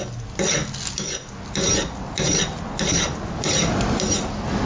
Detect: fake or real real